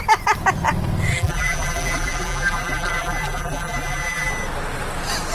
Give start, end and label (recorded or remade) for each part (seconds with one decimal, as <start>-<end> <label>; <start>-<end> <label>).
0.0-1.1 recorded; 1.1-4.3 remade; 4.3-5.3 recorded

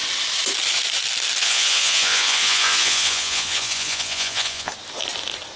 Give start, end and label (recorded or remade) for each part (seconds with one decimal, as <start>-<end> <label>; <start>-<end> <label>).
0.0-1.4 recorded; 1.4-4.7 remade; 4.7-5.6 recorded

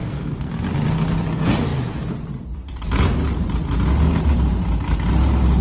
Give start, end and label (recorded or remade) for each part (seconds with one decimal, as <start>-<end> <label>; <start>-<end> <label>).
0.0-0.5 remade; 0.5-5.6 recorded

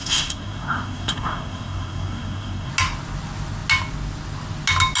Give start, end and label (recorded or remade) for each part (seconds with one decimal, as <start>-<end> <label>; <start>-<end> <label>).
0.0-2.7 remade; 2.7-5.0 recorded

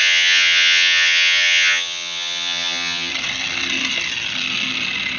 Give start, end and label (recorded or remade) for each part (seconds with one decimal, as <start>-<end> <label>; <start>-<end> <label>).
0.0-3.1 remade; 3.1-5.2 recorded

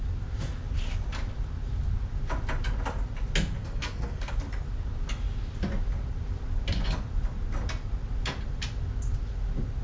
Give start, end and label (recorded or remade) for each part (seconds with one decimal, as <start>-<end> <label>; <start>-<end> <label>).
0.0-3.6 recorded; 3.6-4.3 remade; 4.3-9.8 recorded

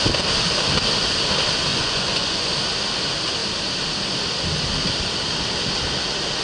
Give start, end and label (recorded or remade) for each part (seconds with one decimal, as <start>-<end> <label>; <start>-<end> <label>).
0.0-1.7 recorded; 1.7-2.5 remade; 2.5-6.4 recorded

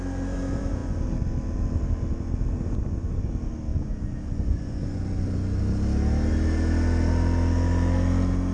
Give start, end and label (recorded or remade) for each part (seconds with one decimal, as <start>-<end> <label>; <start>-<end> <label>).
0.0-3.7 recorded; 3.7-5.0 remade; 5.0-8.5 recorded